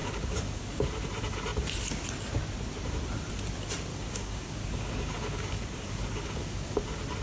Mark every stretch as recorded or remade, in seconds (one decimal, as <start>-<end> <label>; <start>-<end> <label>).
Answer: 0.0-0.9 remade; 0.9-3.9 recorded; 3.9-6.8 remade; 6.8-7.2 recorded